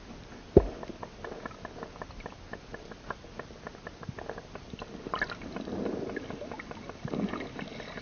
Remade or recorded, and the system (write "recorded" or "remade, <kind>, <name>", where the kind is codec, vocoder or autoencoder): recorded